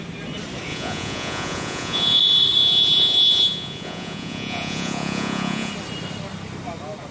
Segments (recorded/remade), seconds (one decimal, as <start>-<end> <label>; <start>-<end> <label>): 0.0-0.7 recorded; 0.7-2.2 remade; 2.2-2.6 recorded; 2.6-5.7 remade; 5.7-7.1 recorded